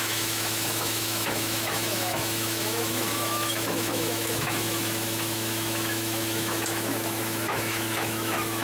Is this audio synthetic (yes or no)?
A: yes